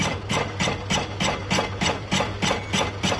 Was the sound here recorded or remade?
remade